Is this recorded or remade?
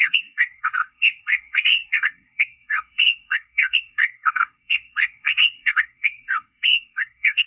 remade